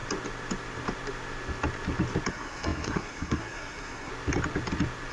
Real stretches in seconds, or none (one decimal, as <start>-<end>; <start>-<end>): 0.0-2.3; 4.1-5.1